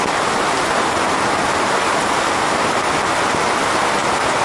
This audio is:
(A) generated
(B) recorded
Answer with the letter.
B